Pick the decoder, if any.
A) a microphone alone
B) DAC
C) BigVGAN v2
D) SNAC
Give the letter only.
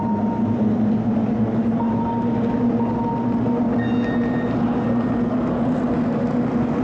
A